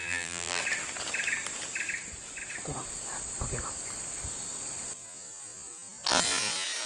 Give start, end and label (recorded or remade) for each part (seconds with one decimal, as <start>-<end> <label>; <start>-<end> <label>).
0.0-0.6 remade; 0.6-6.9 recorded